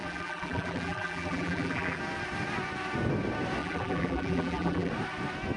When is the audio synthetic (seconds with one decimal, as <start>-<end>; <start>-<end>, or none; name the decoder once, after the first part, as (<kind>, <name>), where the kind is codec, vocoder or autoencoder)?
0.0-2.0 (vocoder, BigVGAN v2); 3.6-4.9